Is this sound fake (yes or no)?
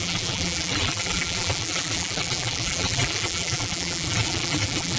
yes